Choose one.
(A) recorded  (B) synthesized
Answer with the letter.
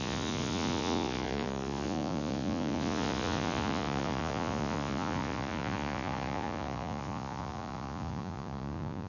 B